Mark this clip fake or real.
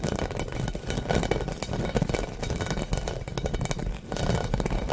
real